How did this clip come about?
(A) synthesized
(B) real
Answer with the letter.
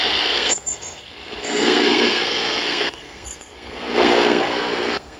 A